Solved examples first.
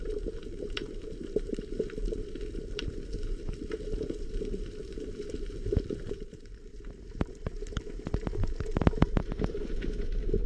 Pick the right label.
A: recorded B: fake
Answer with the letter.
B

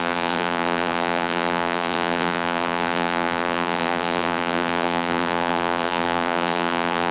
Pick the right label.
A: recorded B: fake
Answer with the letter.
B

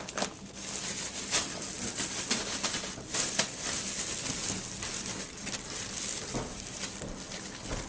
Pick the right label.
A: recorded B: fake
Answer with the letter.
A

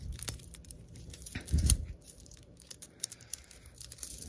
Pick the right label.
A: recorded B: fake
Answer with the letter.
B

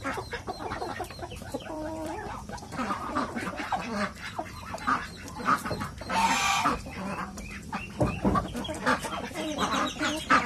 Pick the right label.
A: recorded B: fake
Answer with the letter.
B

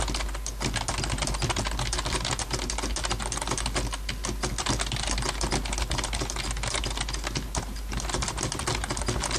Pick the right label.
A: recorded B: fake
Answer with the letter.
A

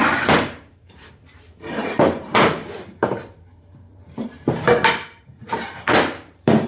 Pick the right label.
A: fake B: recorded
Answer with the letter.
A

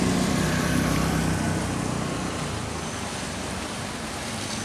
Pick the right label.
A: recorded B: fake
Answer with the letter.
B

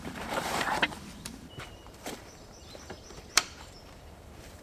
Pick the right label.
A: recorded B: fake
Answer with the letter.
B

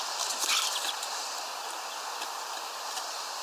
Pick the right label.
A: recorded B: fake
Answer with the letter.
B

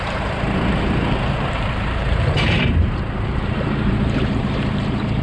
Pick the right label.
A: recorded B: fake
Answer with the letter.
B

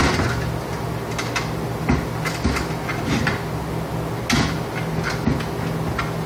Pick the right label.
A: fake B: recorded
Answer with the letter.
B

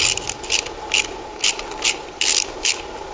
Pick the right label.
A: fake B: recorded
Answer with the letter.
B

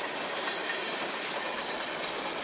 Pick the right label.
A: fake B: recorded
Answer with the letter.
B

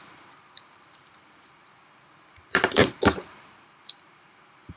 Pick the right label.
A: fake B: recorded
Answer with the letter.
A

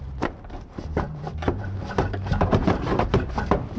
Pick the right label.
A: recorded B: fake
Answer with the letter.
B